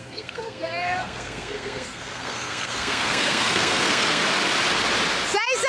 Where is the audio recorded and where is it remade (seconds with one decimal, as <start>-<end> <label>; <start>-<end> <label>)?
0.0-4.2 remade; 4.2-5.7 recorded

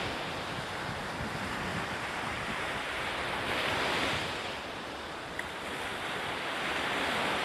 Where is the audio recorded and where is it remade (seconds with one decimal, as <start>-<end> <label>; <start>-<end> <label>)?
0.0-7.4 recorded

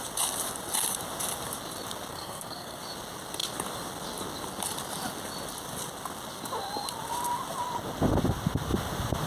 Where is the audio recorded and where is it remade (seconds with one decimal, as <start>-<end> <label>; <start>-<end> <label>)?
0.0-2.1 recorded; 2.1-2.8 remade; 2.8-9.3 recorded

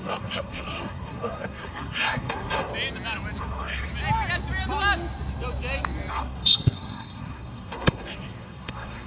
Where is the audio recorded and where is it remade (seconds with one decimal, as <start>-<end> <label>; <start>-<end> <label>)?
0.0-2.7 remade; 2.7-3.4 recorded; 3.4-3.9 remade; 3.9-6.1 recorded; 6.1-9.1 remade

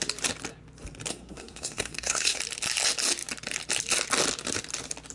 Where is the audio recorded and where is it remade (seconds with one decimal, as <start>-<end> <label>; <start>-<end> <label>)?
0.0-1.1 recorded; 1.1-2.4 remade; 2.4-5.1 recorded